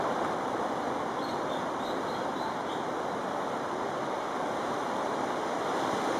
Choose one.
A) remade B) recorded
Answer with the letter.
A